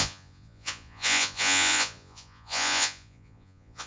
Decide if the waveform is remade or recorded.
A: remade